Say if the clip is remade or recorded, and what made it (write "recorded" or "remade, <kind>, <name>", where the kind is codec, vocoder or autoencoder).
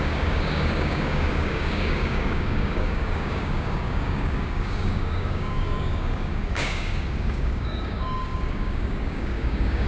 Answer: remade, codec, DAC